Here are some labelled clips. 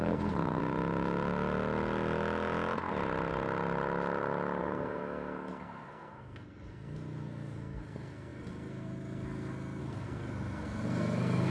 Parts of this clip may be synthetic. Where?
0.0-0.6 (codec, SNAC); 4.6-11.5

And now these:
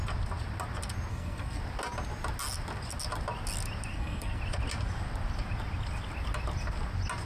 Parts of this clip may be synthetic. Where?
1.1-1.6 (codec, SNAC); 3.9-4.4

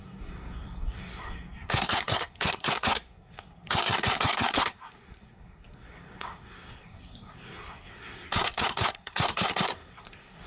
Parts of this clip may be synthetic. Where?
0.0-10.5 (codec, SNAC)

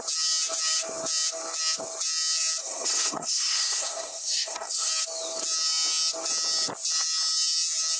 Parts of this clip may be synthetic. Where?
2.6-4.9 (codec, SNAC)

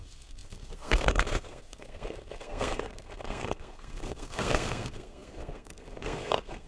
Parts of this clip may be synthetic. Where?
0.0-6.7 (codec, SNAC)

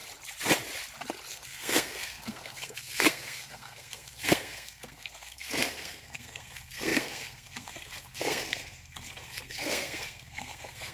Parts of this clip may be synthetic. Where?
1.3-10.9 (codec, SNAC)

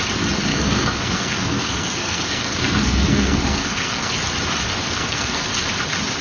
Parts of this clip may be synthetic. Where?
0.5-4.1 (codec, SNAC); 4.8-5.5

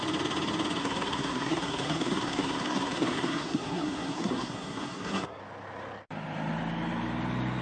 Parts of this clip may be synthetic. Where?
0.8-5.4 (codec, SNAC)